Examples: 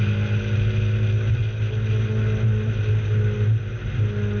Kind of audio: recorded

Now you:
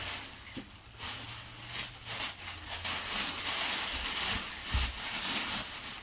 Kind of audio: recorded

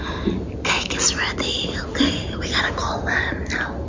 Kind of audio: recorded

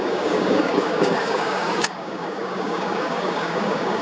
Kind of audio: remade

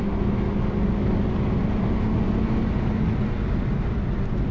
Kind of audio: recorded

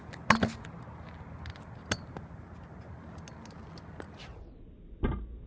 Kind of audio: recorded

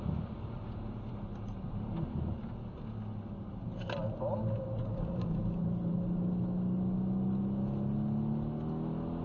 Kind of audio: recorded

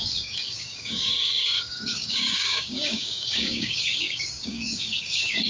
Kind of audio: remade